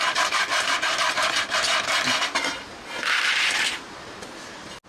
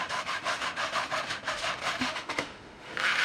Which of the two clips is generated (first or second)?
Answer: second